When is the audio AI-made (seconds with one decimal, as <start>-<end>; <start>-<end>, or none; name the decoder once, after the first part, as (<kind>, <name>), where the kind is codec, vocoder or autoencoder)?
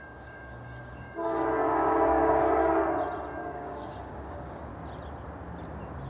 0.0-2.8 (codec, DAC); 3.4-4.7